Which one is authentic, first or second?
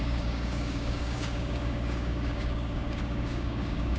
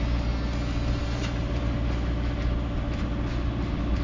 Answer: second